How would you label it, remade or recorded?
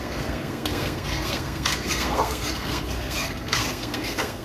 remade